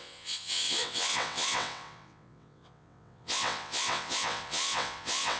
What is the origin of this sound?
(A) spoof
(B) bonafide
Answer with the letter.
A